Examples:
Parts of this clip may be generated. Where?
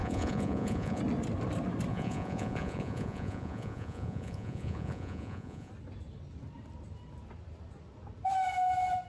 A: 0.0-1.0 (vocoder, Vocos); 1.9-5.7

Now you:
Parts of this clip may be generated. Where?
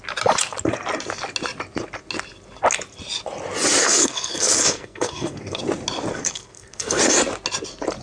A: 3.8-5.6 (codec, SNAC); 6.1-7.0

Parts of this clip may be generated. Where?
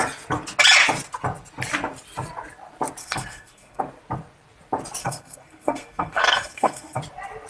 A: 3.0-3.8 (codec, SNAC); 5.0-7.0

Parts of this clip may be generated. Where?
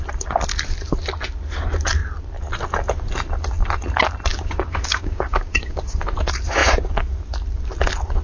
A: 4.3-5.8 (codec, DAC)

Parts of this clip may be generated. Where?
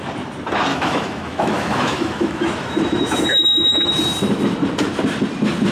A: 0.7-3.9 (autoencoder, DAC-VAE)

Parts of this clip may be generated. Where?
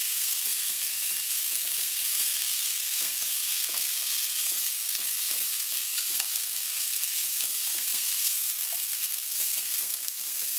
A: 0.0-10.6 (codec, SNAC)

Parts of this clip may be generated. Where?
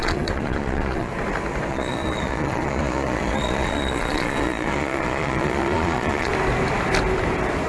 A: 0.0-1.1 (vocoder, Vocos); 1.7-6.3